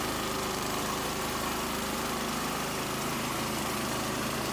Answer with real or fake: fake